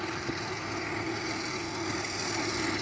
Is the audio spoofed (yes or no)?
no